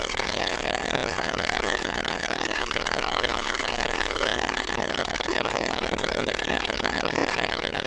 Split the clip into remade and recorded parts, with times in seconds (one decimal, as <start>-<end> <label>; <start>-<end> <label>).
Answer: 0.0-7.9 remade